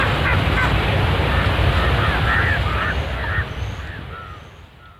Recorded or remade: recorded